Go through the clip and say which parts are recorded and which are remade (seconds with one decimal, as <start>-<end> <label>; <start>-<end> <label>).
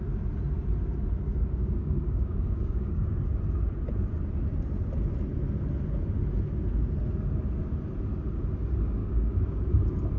0.0-1.6 recorded; 1.6-3.4 remade; 3.4-9.0 recorded; 9.0-9.7 remade; 9.7-10.2 recorded